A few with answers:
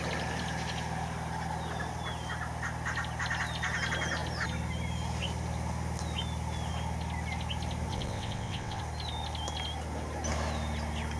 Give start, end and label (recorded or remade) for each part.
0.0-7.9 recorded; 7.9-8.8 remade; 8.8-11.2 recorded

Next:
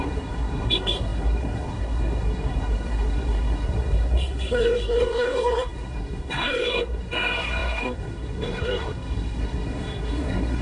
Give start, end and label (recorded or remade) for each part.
0.0-10.6 remade

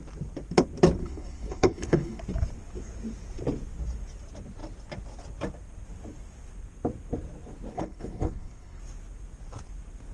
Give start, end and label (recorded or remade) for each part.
0.0-1.0 recorded; 1.0-2.2 remade; 2.2-7.7 recorded; 7.7-8.8 remade; 8.8-10.1 recorded

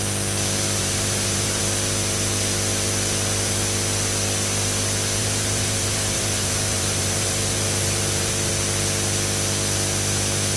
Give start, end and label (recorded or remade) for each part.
0.0-0.8 recorded; 0.8-1.6 remade; 1.6-5.2 recorded; 5.2-8.5 remade; 8.5-10.6 recorded

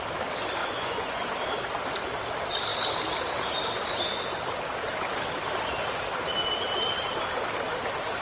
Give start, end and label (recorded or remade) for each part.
0.0-0.6 recorded; 0.6-1.3 remade; 1.3-8.2 recorded

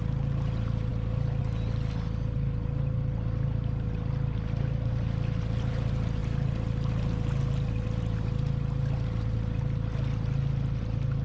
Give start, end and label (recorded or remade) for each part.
0.0-11.2 recorded

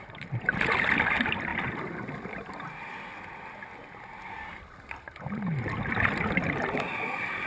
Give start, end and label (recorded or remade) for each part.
0.0-1.5 remade; 1.5-5.9 recorded; 5.9-7.5 remade

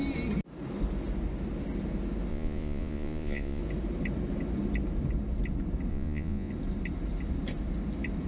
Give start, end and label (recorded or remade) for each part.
0.0-2.3 recorded; 2.3-3.6 remade; 3.6-5.9 recorded; 5.9-6.5 remade; 6.5-8.3 recorded